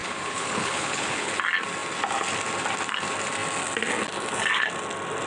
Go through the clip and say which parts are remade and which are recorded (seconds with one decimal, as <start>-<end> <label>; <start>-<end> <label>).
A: 0.0-1.3 remade; 1.3-5.3 recorded